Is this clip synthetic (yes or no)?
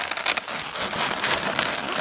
no